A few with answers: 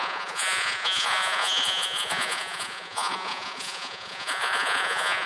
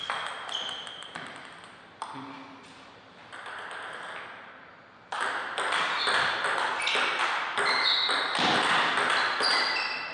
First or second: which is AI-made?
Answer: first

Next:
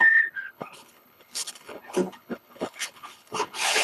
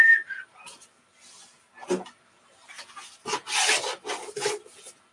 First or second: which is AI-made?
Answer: first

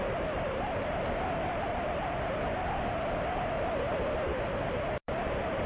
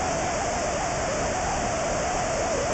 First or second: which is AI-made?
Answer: first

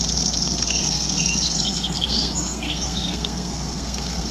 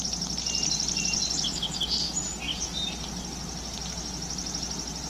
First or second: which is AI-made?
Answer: first